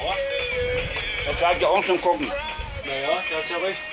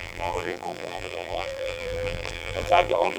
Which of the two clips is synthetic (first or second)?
second